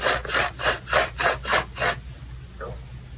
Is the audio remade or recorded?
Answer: recorded